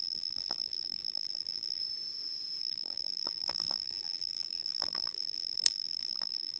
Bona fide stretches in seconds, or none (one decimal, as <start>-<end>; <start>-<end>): 1.8-2.6